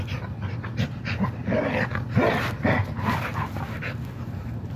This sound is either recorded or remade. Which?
recorded